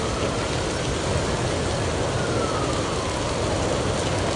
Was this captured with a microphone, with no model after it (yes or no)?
yes